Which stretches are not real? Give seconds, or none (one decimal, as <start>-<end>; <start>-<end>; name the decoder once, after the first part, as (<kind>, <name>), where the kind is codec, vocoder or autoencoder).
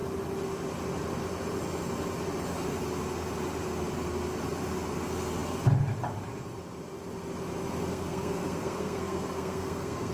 7.9-10.1 (codec, SNAC)